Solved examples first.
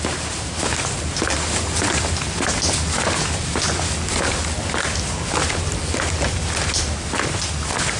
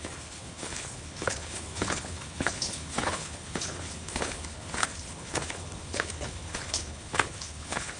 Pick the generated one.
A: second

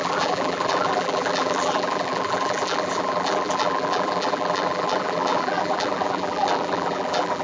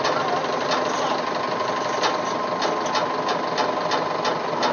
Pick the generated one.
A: first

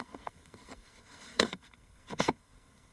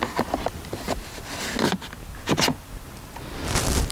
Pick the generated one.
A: first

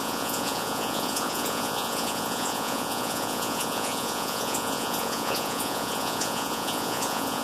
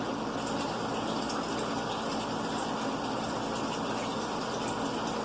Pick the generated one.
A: first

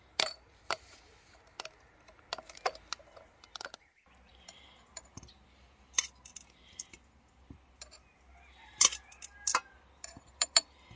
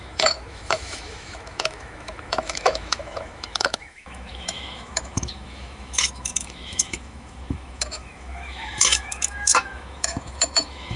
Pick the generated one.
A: second